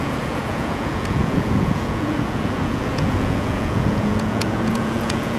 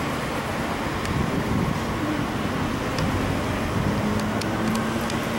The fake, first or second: first